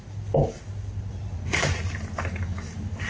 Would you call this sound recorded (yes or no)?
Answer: yes